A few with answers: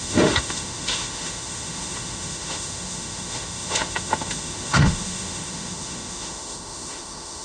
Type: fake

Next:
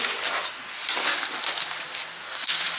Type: real